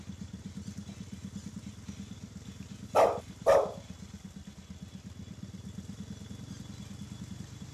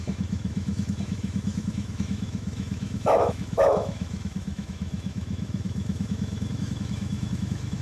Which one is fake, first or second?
second